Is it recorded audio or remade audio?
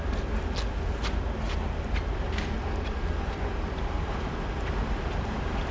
recorded